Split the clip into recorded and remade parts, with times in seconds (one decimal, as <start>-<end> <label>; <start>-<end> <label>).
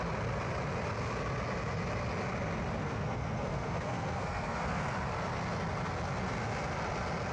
0.0-2.8 recorded; 2.8-4.8 remade; 4.8-7.3 recorded